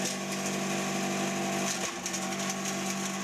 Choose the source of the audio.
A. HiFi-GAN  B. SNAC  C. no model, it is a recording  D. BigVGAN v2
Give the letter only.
C